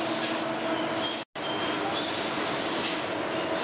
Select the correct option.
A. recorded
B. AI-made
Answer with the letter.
A